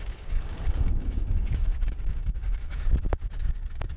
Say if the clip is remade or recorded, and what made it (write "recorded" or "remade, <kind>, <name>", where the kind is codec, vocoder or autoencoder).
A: remade, codec, DAC